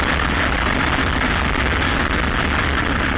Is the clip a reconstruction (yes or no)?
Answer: no